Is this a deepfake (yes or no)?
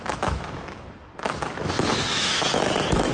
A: yes